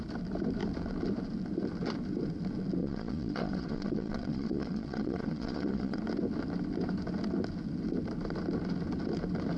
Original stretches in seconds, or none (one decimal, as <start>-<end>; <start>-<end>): 0.0-2.8; 6.0-9.6